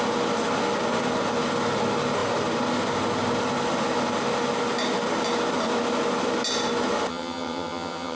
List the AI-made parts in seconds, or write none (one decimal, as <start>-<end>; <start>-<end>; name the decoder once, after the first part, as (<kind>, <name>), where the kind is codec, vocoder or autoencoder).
7.1-8.2 (vocoder, HiFi-GAN)